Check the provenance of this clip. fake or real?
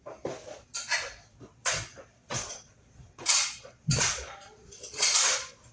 fake